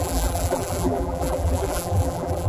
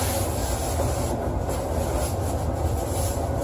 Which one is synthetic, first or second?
first